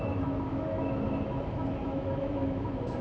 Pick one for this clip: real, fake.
fake